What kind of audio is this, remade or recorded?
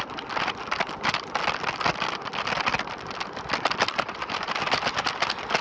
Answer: recorded